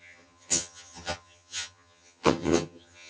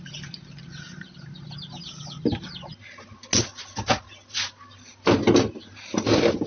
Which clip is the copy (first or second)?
first